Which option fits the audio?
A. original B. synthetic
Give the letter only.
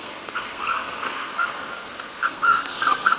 B